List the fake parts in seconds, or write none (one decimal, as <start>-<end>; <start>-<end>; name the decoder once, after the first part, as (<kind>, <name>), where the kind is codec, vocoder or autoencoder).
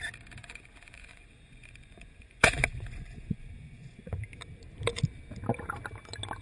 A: 0.4-4.2 (vocoder, Vocos)